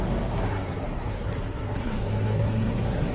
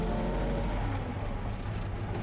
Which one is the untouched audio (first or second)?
second